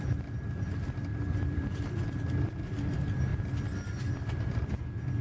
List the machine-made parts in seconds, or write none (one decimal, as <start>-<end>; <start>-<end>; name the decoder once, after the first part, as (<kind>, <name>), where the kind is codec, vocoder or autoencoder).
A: 1.1-2.9 (vocoder, BigVGAN v2); 3.3-4.7